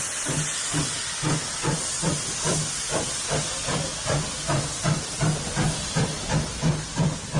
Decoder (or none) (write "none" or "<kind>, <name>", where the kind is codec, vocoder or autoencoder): none